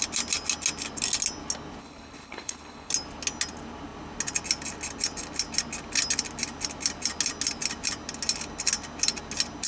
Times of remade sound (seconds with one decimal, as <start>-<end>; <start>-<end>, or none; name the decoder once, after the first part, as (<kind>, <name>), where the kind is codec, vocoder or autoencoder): 1.8-2.9 (codec, HILCodec)